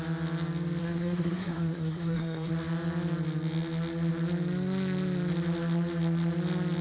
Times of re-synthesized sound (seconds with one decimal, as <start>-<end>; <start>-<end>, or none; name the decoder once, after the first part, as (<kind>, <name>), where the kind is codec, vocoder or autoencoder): 0.8-2.5 (codec, SNAC)